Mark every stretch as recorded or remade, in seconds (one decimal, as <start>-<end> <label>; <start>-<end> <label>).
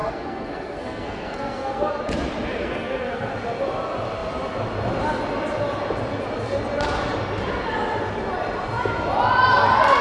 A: 0.0-2.0 remade; 2.0-2.6 recorded; 2.6-3.3 remade; 3.3-10.0 recorded